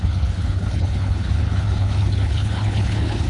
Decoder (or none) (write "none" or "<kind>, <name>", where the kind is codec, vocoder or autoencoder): codec, HILCodec